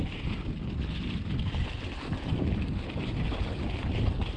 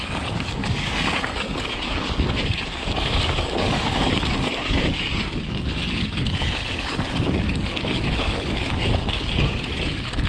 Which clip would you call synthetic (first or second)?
second